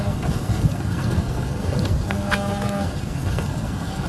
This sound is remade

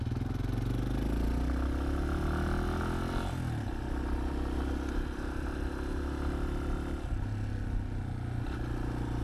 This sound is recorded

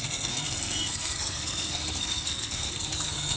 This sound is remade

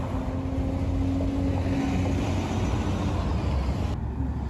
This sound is recorded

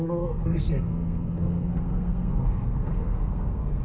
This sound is remade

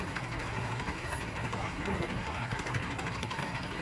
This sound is remade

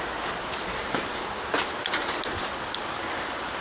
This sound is recorded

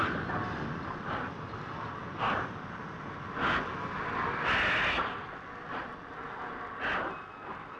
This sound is recorded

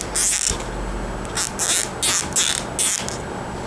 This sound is recorded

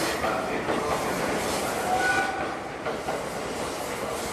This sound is recorded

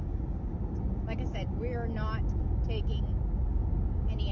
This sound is recorded